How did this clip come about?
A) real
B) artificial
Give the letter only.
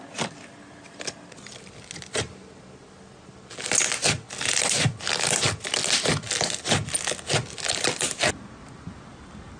A